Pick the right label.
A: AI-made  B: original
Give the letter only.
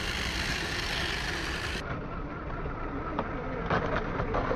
B